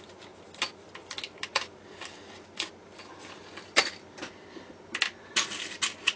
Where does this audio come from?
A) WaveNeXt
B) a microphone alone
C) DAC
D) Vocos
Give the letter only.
B